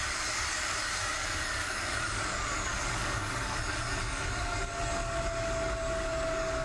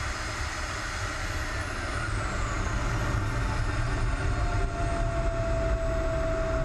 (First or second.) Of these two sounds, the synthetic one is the first